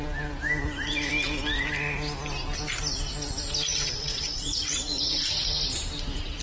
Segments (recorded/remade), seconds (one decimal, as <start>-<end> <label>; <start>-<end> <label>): 0.0-3.7 recorded; 3.7-5.3 remade; 5.3-6.4 recorded

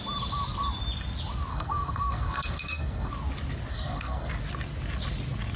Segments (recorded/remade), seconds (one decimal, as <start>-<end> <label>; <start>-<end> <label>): 0.0-1.5 recorded; 1.5-3.1 remade; 3.1-3.7 recorded; 3.7-4.3 remade; 4.3-5.6 recorded

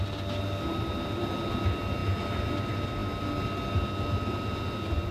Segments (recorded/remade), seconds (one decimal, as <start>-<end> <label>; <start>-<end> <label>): 0.0-5.1 recorded

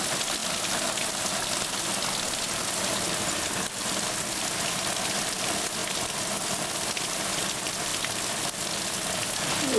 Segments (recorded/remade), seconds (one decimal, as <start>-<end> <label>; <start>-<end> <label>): 0.0-9.8 recorded